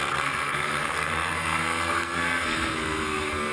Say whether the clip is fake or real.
fake